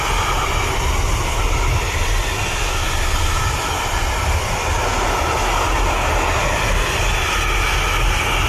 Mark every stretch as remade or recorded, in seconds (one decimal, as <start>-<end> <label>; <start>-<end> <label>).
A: 0.0-8.5 recorded

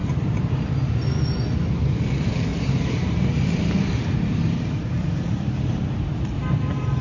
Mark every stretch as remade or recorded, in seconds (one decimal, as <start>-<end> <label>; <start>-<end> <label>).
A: 0.0-0.7 remade; 0.7-2.5 recorded; 2.5-7.0 remade

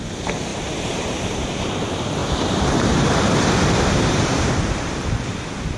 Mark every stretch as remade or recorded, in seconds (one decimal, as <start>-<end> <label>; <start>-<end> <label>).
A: 0.0-0.5 recorded; 0.5-1.6 remade; 1.6-2.2 recorded; 2.2-5.1 remade; 5.1-5.8 recorded

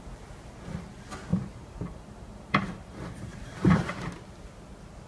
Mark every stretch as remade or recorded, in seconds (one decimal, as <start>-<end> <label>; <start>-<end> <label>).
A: 0.0-1.3 recorded; 1.3-3.9 remade; 3.9-5.1 recorded

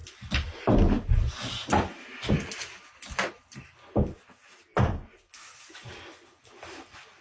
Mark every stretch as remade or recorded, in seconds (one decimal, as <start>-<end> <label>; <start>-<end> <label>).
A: 0.0-1.1 remade; 1.1-1.6 recorded; 1.6-5.2 remade; 5.2-7.2 recorded